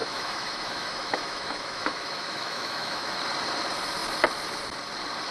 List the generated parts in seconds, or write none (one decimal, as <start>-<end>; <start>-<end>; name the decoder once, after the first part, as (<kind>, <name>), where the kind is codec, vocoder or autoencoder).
0.0-3.2 (autoencoder, DAC-VAE)